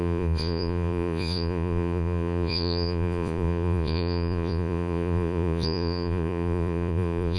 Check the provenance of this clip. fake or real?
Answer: fake